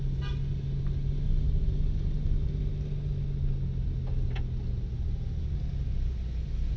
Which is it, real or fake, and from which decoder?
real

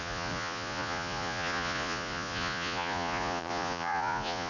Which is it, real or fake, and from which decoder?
fake, vocoder, Vocos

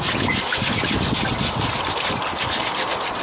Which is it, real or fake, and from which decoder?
real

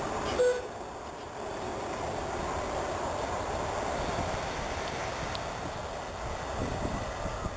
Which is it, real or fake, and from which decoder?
real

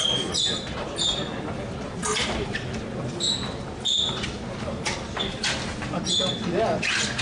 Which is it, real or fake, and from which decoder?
real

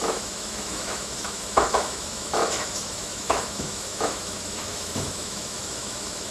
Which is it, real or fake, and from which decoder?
fake, autoencoder, DAC-VAE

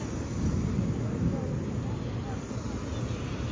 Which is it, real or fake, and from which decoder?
real